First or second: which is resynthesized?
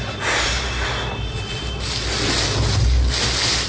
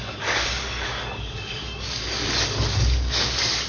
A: second